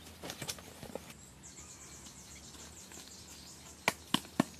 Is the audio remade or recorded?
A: recorded